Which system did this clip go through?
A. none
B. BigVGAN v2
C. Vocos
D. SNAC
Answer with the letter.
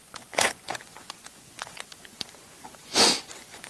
C